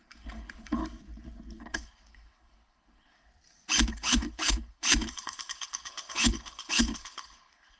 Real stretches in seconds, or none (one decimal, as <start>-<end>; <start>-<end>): 0.8-1.6; 3.3-3.9